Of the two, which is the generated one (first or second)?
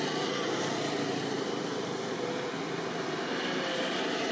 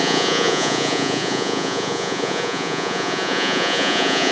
second